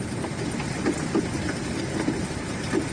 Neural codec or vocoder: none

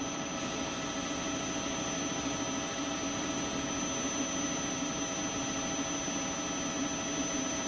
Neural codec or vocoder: none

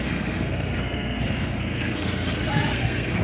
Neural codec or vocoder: codec, SNAC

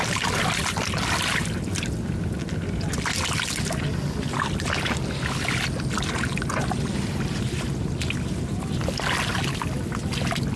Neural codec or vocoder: none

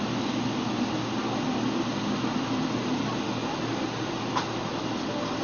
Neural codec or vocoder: none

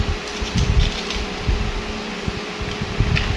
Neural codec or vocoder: none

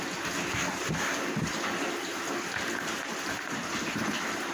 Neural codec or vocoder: none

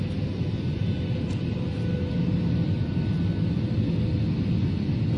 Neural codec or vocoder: none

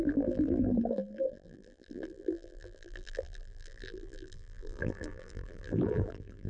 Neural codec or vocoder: vocoder, BigVGAN v2